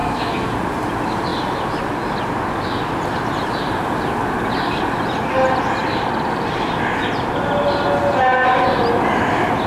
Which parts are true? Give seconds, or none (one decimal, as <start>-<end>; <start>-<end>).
0.5-9.7